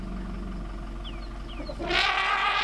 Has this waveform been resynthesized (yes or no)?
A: no